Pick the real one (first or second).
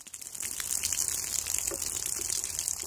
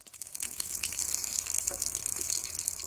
first